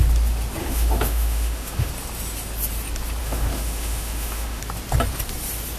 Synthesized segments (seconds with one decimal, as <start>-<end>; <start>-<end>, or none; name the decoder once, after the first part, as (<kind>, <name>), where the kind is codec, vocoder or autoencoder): 0.6-1.9 (autoencoder, DAC-VAE); 3.2-4.6